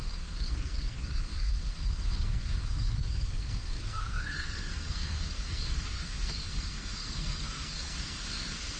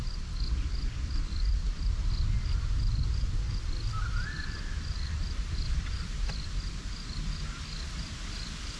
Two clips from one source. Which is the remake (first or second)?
first